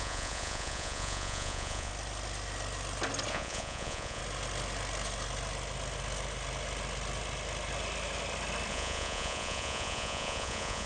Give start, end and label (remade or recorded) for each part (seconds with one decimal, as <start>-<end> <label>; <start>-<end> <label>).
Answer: 0.0-1.9 remade; 1.9-3.3 recorded; 3.3-4.2 remade; 4.2-8.7 recorded; 8.7-10.9 remade